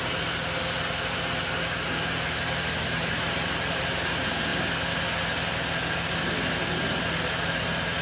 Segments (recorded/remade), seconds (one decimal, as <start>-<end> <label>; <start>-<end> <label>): 0.0-8.0 recorded